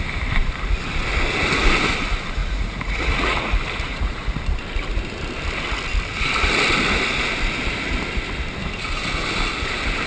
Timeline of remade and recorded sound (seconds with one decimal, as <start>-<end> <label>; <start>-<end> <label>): 0.0-2.4 recorded; 2.4-3.5 remade; 3.5-3.9 recorded; 3.9-4.4 remade; 4.4-10.1 recorded